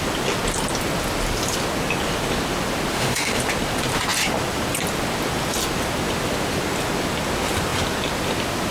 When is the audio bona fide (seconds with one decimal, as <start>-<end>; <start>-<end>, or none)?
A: 0.0-2.9; 3.4-8.7